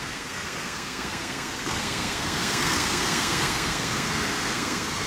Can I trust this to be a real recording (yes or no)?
no